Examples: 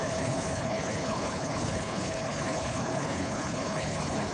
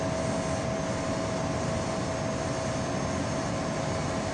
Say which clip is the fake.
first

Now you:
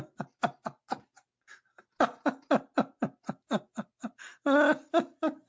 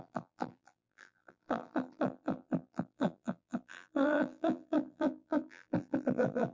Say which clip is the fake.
second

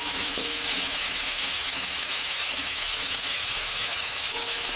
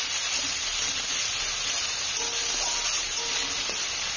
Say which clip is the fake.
first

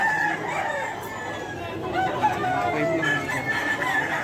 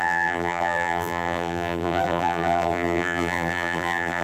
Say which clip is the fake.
second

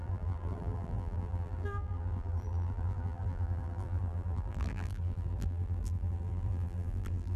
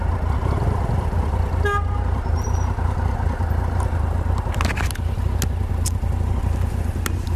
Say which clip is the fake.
first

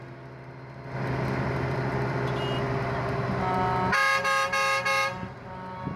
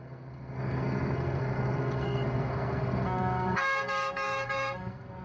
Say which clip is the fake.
second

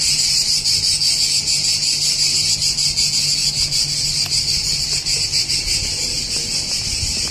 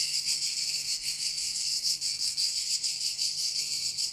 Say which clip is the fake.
second